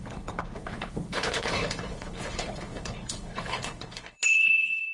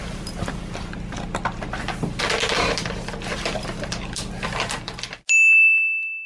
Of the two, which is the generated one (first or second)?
first